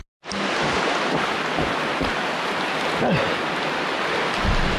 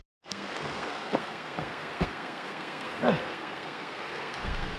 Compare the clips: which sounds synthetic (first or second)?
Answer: second